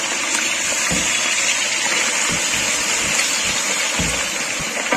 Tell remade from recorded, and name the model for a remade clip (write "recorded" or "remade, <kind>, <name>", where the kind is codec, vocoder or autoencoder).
recorded